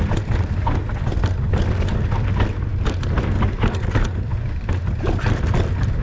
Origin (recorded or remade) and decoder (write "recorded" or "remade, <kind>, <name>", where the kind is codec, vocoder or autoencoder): recorded